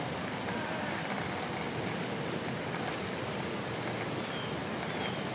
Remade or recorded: recorded